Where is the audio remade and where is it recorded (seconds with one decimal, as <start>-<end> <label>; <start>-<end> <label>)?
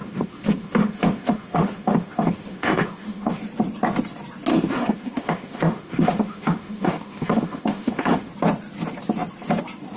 0.0-3.4 remade; 3.4-4.5 recorded; 4.5-8.3 remade; 8.3-10.0 recorded